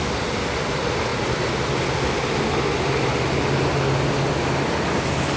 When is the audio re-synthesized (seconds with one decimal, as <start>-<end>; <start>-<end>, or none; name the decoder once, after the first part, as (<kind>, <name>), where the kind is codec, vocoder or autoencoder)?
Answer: none